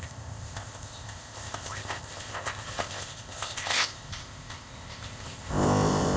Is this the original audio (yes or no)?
no